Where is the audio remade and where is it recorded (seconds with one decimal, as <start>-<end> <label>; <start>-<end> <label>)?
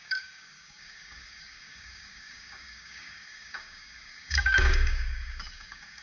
0.0-6.0 remade